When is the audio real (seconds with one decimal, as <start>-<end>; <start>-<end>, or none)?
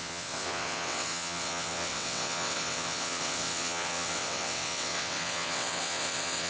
none